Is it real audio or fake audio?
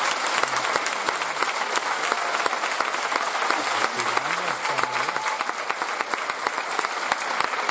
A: real